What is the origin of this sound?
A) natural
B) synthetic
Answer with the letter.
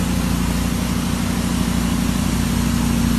A